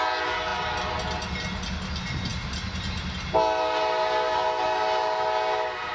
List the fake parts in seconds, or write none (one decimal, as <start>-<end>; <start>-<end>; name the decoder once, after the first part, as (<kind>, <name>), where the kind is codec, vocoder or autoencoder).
none